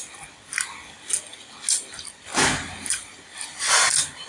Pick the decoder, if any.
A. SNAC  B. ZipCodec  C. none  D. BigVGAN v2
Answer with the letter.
C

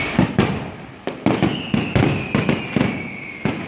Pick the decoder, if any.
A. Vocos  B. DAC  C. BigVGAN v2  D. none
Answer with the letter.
D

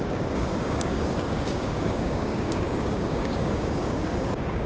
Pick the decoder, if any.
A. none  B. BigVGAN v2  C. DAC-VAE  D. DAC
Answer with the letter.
D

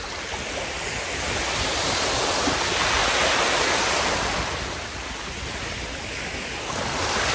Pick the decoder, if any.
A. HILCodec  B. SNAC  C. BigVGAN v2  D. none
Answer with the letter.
D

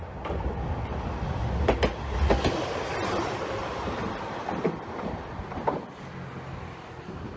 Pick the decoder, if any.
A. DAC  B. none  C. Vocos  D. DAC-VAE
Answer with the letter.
B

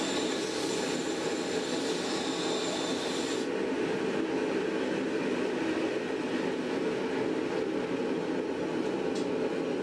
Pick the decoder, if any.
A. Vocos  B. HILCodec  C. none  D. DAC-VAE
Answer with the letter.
C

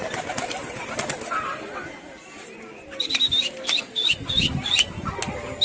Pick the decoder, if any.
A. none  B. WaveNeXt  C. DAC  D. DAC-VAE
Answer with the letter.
A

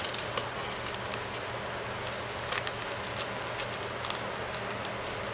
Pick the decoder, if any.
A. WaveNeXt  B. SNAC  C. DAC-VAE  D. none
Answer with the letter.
D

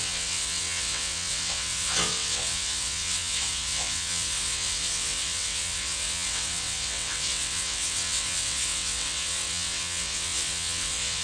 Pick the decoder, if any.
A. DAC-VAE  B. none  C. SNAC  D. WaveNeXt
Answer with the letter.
D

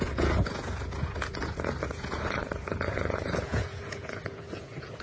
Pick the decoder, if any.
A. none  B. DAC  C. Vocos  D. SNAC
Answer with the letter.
C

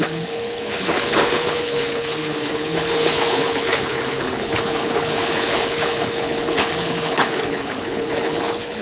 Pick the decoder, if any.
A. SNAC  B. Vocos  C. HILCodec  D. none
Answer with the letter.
C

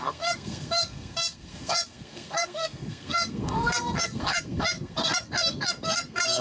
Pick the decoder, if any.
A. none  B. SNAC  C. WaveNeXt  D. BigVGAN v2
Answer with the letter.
B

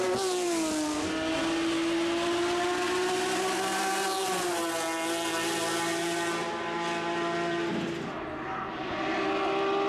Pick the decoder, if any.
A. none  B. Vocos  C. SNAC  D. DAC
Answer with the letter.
A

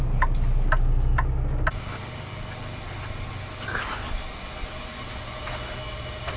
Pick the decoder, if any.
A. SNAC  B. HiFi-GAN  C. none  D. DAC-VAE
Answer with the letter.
C